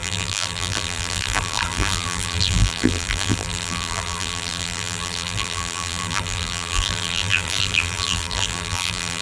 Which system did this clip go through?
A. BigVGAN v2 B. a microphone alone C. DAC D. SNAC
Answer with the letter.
A